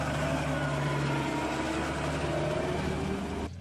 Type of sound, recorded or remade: recorded